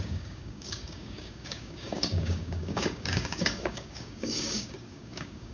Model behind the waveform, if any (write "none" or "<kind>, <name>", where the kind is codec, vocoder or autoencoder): codec, DAC